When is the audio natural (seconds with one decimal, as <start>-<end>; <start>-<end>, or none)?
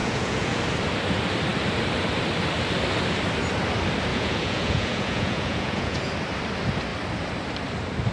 0.6-4.1; 6.1-8.1